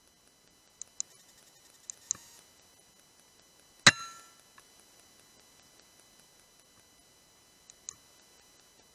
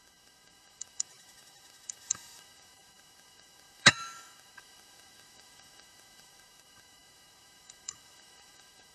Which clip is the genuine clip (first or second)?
first